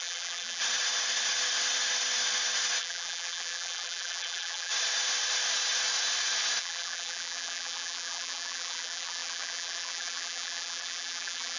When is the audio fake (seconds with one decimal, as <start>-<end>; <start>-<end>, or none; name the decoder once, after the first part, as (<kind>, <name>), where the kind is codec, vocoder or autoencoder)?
0.0-0.6 (vocoder, BigVGAN v2); 2.8-4.7; 6.6-11.6

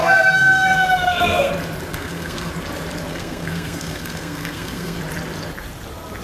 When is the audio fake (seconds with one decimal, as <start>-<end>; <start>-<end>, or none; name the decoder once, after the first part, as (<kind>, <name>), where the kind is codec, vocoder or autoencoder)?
0.0-1.5 (codec, SNAC); 1.9-2.5; 3.1-5.0